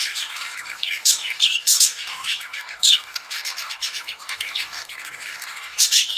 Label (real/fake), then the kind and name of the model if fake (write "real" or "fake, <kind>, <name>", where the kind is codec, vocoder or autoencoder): fake, codec, DAC